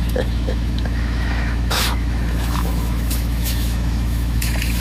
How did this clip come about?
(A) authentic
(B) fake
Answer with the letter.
B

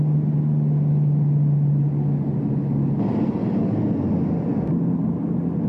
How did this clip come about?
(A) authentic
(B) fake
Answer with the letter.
A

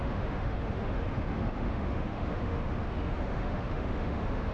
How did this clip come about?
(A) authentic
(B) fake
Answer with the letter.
B